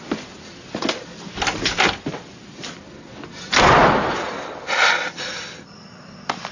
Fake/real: real